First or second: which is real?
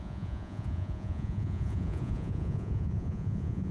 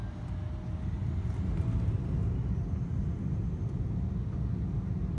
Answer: second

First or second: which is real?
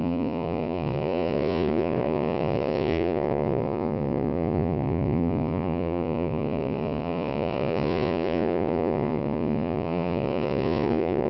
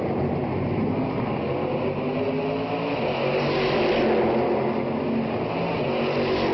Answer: second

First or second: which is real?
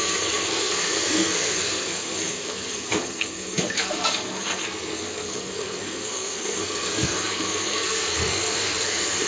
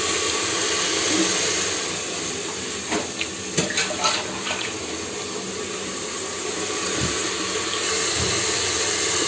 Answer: second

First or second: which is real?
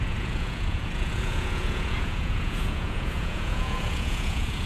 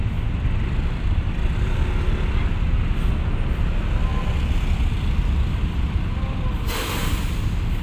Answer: second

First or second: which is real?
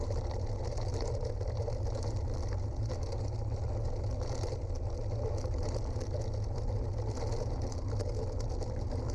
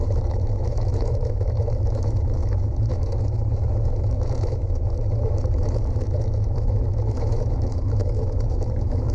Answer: first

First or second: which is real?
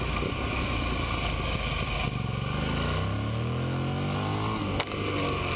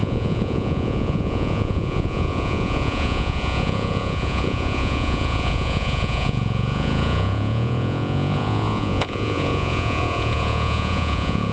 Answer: first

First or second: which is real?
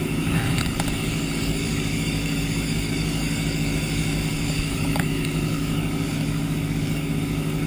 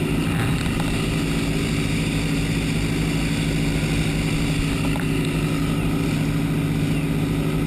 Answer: second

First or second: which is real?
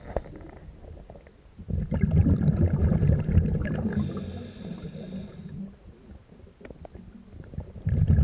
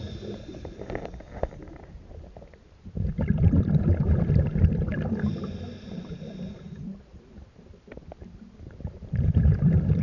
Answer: first